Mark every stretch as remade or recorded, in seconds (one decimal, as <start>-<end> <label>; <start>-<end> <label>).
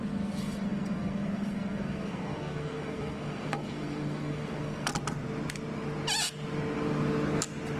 0.0-4.9 remade; 4.9-7.8 recorded